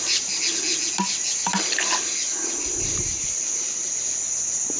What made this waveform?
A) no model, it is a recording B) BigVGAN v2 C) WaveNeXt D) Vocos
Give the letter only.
A